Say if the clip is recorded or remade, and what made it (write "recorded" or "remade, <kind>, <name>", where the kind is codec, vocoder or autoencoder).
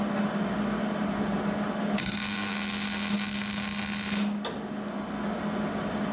recorded